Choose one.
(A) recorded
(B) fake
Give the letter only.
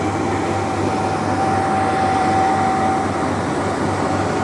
A